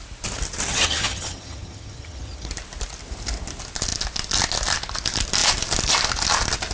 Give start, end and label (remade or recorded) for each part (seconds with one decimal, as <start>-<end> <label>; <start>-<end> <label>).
0.0-0.7 recorded; 0.7-2.5 remade; 2.5-6.7 recorded